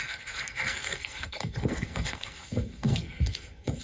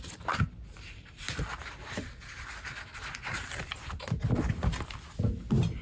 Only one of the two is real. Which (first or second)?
second